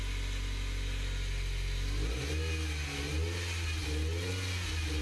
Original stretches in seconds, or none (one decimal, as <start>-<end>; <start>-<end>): 0.0-5.0